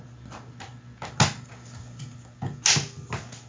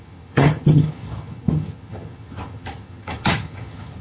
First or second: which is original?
first